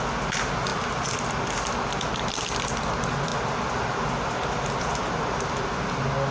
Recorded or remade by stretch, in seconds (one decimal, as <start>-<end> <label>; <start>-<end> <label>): 0.0-6.3 recorded